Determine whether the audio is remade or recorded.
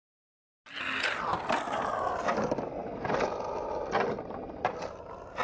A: recorded